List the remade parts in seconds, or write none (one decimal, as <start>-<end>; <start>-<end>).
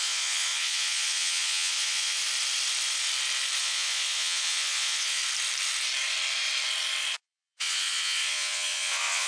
0.0-2.2; 3.6-5.2; 7.2-9.3